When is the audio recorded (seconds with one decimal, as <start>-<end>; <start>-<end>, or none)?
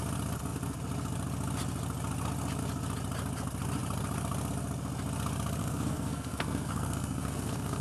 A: 0.0-5.6